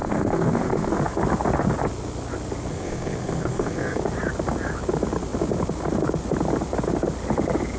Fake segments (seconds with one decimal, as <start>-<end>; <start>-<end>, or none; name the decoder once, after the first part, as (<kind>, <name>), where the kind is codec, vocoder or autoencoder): 0.0-0.9 (codec, SNAC); 2.7-4.0